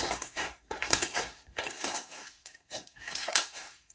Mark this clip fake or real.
fake